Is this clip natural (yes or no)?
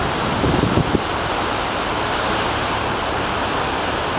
yes